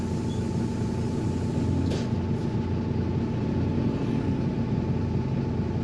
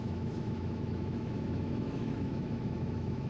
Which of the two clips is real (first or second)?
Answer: first